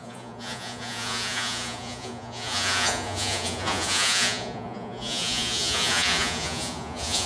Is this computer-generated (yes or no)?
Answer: yes